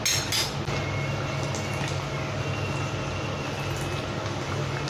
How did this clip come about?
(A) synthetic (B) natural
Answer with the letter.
B